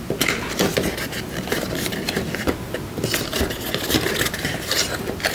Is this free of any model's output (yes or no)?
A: yes